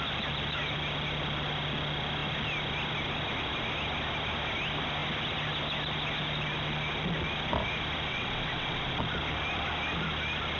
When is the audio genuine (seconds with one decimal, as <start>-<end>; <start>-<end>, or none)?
0.0-8.1; 9.0-10.6